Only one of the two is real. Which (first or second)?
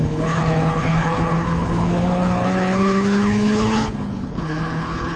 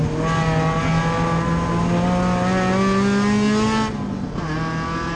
second